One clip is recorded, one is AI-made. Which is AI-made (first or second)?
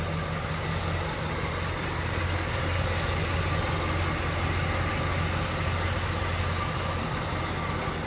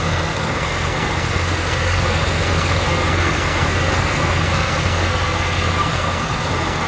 second